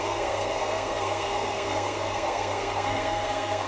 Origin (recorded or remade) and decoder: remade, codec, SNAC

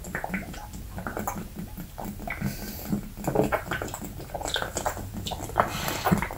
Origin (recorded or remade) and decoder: recorded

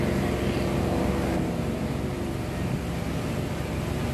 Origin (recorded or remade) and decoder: recorded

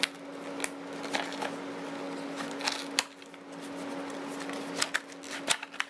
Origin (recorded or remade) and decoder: recorded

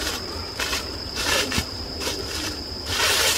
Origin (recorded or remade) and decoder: remade, vocoder, BigVGAN v2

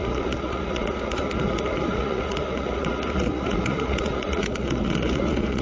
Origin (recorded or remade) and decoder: remade, vocoder, Vocos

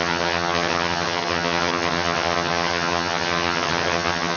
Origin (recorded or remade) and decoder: remade, vocoder, HiFi-GAN